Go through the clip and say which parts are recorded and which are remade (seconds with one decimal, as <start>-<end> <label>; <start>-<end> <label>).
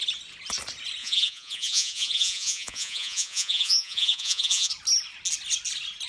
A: 0.0-1.0 recorded; 1.0-4.7 remade; 4.7-6.1 recorded